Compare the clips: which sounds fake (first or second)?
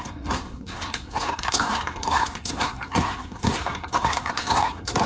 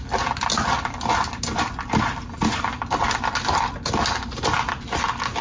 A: first